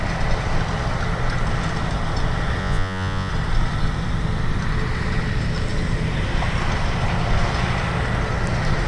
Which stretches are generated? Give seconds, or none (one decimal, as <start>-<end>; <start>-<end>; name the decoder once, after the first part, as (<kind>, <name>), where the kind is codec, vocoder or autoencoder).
2.6-3.3 (vocoder, Vocos)